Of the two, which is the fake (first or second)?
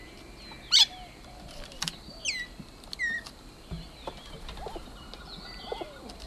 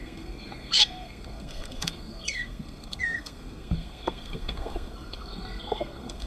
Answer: second